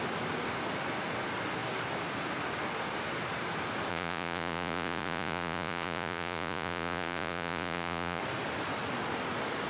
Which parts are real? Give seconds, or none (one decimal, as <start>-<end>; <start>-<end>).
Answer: 0.0-3.9; 8.2-9.7